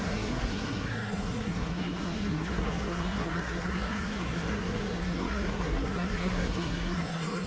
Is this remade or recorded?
remade